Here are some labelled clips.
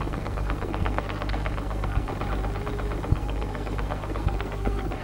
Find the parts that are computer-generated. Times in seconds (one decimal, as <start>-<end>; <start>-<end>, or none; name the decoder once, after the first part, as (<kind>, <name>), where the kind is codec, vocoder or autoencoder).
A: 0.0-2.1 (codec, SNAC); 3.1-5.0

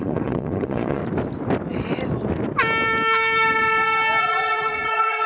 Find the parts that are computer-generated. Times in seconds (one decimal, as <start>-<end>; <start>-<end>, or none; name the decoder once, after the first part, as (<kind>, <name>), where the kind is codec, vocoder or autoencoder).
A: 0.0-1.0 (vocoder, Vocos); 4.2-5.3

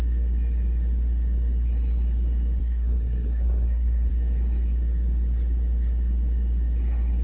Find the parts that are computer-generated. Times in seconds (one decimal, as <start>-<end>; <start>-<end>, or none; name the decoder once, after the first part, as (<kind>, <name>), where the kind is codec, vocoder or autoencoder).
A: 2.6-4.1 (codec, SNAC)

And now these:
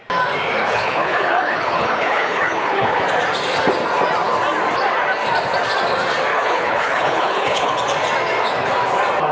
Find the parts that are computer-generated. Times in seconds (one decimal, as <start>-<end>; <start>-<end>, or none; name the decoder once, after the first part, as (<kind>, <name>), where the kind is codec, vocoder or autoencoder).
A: 0.6-3.0 (codec, HILCodec); 6.3-7.7